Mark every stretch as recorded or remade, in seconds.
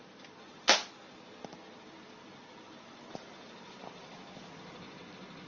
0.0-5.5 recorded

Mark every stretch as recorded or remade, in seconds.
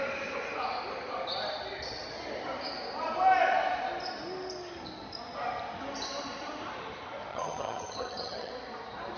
0.0-7.3 recorded; 7.3-8.5 remade; 8.5-9.2 recorded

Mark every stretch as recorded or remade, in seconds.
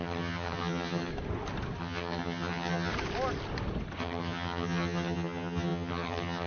0.0-1.1 remade; 1.1-1.8 recorded; 1.8-2.9 remade; 2.9-4.0 recorded; 4.0-6.5 remade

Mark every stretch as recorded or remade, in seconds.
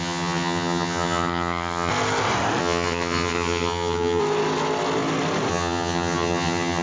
0.0-1.9 remade; 1.9-2.6 recorded; 2.6-4.2 remade; 4.2-5.5 recorded; 5.5-6.8 remade